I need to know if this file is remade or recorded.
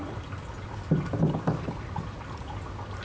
recorded